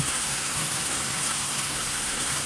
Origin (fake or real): fake